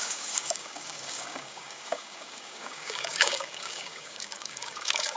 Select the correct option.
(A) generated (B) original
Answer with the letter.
A